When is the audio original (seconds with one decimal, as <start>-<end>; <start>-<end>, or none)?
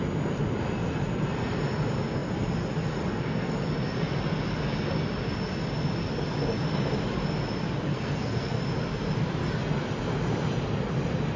0.0-7.9; 8.6-11.4